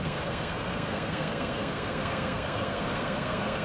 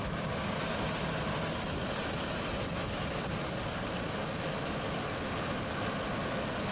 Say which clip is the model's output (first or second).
first